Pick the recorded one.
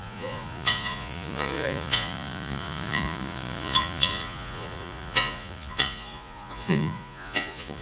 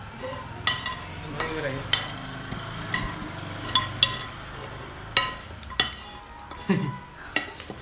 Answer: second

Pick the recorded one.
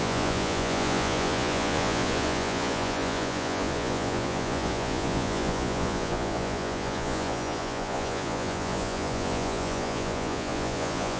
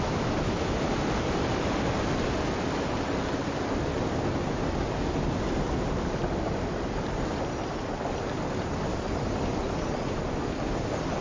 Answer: second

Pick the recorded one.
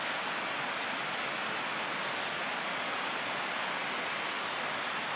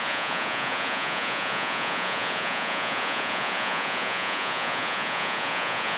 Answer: first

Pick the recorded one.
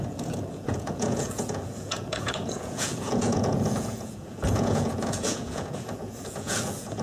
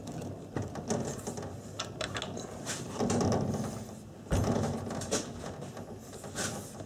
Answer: second